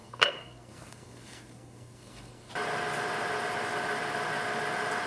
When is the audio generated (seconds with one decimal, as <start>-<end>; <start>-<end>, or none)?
0.0-2.5